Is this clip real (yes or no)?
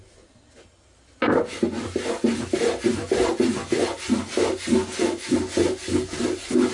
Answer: yes